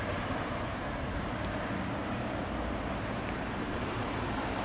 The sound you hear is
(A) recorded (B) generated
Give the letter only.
B